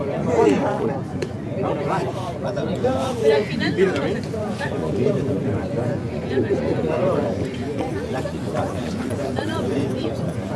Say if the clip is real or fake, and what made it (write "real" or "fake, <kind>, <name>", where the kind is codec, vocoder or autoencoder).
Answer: fake, vocoder, Vocos